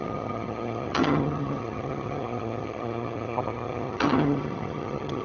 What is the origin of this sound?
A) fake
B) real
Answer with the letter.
A